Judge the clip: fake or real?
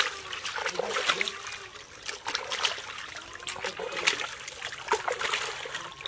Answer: real